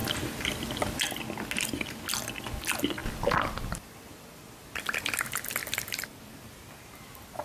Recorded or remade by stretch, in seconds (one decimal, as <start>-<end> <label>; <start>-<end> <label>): 0.0-7.4 recorded